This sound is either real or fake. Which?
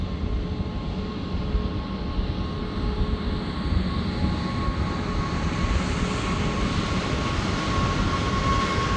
real